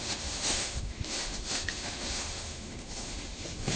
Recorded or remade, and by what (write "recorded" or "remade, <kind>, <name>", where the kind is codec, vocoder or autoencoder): remade, autoencoder, DAC-VAE